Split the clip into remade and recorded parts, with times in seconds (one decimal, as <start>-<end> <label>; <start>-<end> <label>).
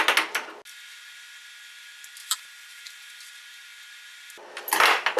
0.0-2.2 recorded; 2.2-3.2 remade; 3.2-5.2 recorded